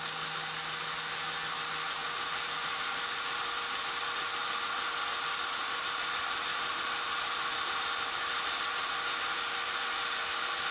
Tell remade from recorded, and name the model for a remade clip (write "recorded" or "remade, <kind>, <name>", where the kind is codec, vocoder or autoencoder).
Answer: recorded